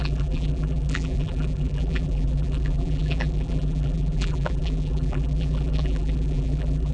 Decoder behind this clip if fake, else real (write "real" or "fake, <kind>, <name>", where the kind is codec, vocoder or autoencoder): fake, vocoder, BigVGAN v2